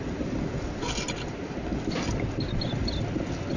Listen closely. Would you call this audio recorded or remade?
recorded